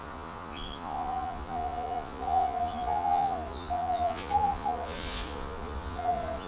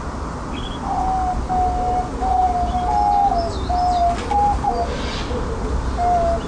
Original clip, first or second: second